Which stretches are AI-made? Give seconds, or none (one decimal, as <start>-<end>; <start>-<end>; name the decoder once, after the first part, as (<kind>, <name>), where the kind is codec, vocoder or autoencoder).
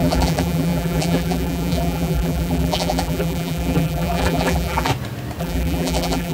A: 0.0-4.9 (vocoder, BigVGAN v2); 5.4-6.3